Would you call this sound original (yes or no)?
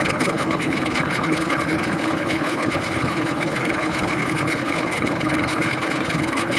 no